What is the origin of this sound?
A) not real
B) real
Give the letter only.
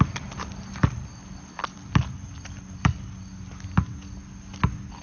B